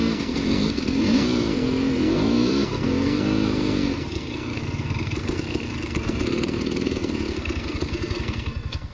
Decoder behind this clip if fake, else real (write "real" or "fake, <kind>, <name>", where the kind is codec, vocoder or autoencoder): fake, codec, SNAC